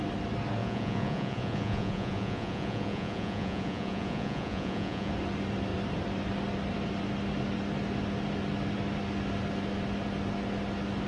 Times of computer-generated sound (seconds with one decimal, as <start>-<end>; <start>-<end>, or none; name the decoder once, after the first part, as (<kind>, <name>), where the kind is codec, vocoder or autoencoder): 0.6-5.1 (vocoder, Vocos)